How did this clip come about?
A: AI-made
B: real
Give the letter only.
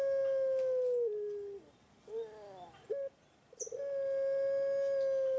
B